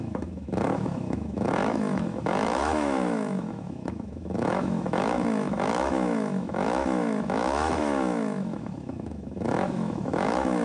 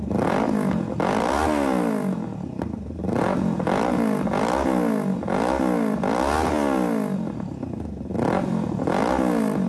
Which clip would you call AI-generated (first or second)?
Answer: first